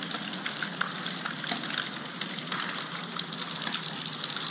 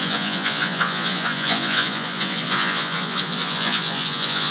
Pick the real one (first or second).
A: first